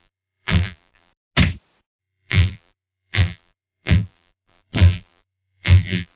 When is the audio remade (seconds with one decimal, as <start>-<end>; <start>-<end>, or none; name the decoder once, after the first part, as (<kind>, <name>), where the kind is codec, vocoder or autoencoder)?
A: 0.0-1.1 (vocoder, BigVGAN v2); 2.0-6.2